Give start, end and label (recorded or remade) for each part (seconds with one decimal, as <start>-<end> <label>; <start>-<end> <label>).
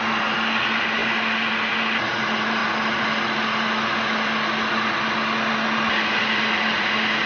0.0-7.3 recorded